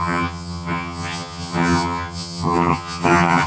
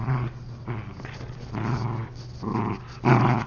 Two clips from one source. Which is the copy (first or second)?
first